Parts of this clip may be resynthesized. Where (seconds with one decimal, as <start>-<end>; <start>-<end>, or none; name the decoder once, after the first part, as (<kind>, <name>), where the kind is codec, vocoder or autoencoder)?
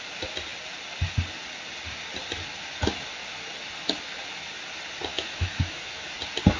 5.1-6.1 (autoencoder, DAC-VAE)